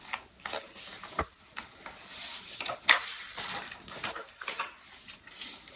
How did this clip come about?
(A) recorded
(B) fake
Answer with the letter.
A